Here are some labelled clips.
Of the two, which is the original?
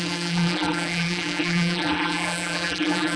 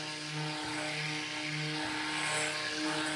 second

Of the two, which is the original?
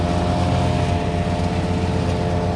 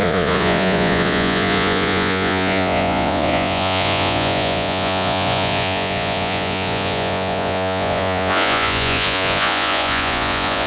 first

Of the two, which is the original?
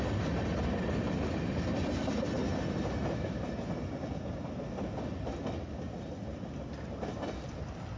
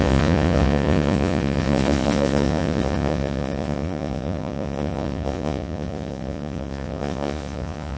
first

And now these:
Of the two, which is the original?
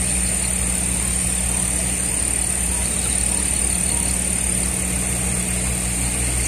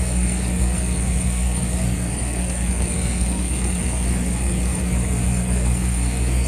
first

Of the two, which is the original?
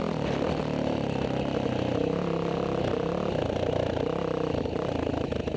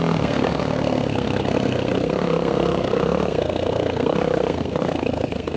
first